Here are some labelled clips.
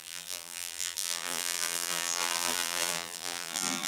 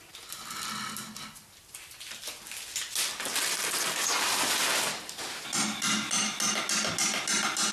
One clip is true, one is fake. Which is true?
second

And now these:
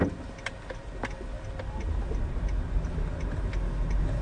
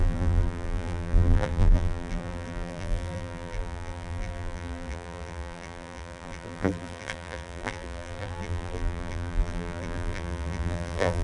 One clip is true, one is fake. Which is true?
first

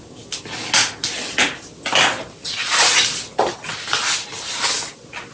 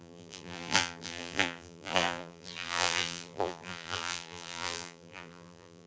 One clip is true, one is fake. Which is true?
first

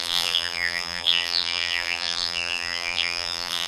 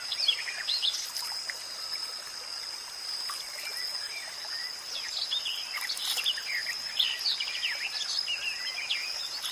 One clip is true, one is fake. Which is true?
second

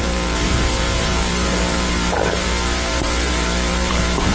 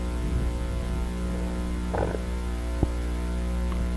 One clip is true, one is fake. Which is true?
second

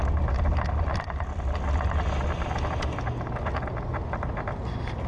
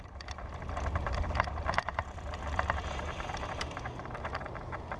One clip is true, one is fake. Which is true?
first